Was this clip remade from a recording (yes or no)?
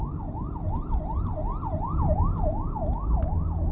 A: no